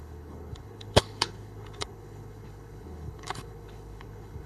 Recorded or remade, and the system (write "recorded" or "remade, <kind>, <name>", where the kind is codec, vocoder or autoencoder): remade, codec, HILCodec